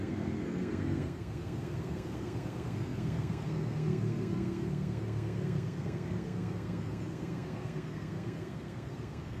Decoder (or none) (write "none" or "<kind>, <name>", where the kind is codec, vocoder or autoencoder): codec, SNAC